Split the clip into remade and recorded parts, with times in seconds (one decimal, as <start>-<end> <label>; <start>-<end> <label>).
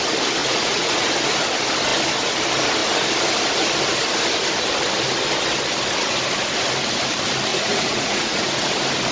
0.0-0.4 recorded; 0.4-1.1 remade; 1.1-7.5 recorded; 7.5-8.7 remade; 8.7-9.1 recorded